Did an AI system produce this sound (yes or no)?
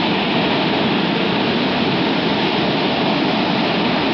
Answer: no